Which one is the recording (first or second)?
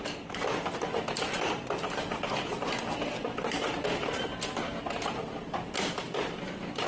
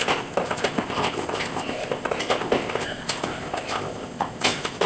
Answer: first